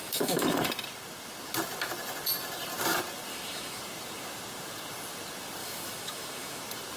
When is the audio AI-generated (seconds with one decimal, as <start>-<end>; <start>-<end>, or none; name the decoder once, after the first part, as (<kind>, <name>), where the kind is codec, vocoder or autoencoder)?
0.0-0.7 (autoencoder, DAC-VAE); 3.3-3.8; 5.6-6.6